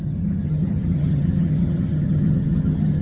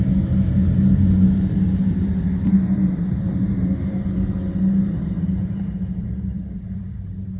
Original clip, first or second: second